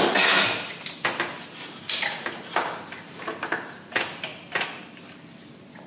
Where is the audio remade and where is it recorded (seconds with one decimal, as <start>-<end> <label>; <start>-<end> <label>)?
0.0-4.3 recorded; 4.3-5.5 remade; 5.5-5.9 recorded